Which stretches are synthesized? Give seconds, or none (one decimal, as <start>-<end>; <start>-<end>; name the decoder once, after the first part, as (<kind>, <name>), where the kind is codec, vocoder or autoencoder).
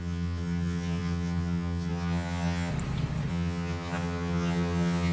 0.0-2.7 (vocoder, HiFi-GAN); 3.3-5.1